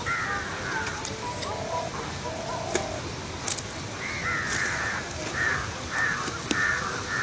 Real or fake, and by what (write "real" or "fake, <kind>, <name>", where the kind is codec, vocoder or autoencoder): real